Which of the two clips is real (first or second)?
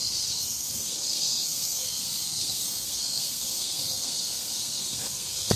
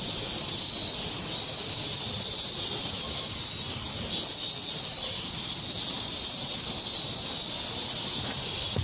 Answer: second